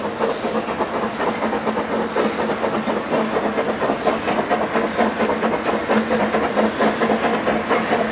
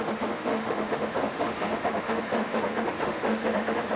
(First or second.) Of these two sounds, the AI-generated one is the second